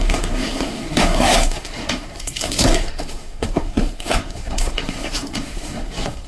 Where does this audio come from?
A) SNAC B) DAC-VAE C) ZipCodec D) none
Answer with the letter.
A